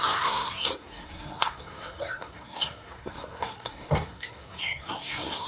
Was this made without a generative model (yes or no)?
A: no